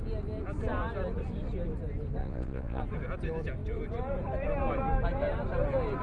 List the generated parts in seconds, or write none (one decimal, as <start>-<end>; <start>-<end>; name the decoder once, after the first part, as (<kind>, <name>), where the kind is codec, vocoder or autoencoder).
2.2-2.8 (vocoder, Vocos)